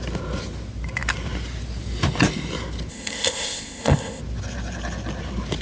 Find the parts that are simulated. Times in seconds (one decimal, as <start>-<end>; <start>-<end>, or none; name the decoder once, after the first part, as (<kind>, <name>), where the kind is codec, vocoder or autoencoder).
2.9-4.2 (codec, ZipCodec)